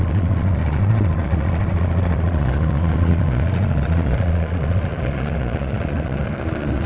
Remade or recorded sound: remade